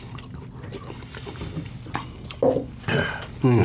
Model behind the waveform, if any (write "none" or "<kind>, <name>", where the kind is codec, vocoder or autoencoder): none